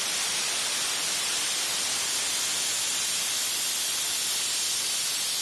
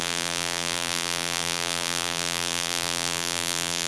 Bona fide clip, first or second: first